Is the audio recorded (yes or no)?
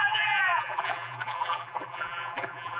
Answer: no